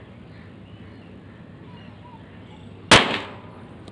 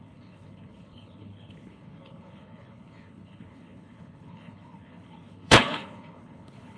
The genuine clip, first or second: first